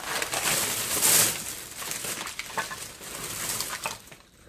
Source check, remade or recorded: recorded